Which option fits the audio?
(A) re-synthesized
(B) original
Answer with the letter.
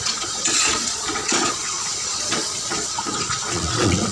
A